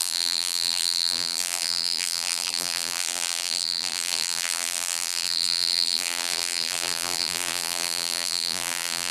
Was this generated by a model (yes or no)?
yes